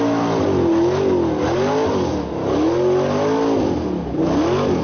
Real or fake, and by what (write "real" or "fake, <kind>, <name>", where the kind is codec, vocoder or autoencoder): real